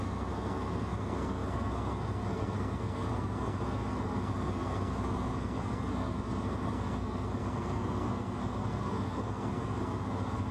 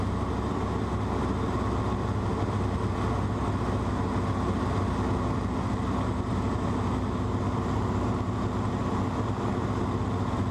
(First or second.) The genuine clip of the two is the second